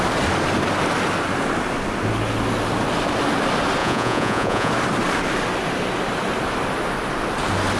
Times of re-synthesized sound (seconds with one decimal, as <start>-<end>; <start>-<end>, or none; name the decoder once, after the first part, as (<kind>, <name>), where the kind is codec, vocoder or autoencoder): 3.8-4.7 (vocoder, Vocos)